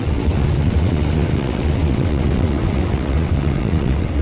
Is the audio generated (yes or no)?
yes